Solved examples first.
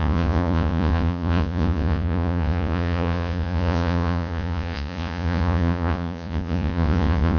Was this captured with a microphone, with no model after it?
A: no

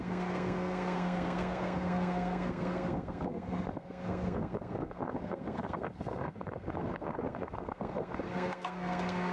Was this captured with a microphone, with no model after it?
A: no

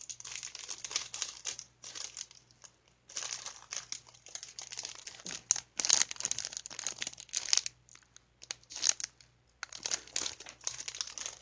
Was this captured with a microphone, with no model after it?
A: yes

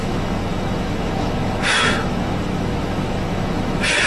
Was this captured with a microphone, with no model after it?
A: no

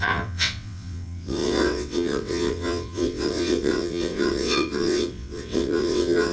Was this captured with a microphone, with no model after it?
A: no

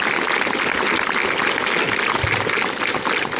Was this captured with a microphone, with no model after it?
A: yes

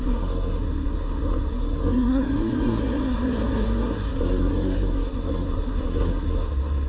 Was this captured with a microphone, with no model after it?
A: no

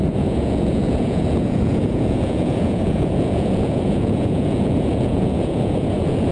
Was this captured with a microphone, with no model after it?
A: no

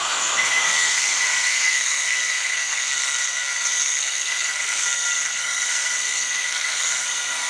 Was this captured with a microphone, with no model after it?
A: no